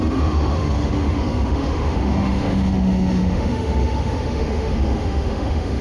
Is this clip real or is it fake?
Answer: fake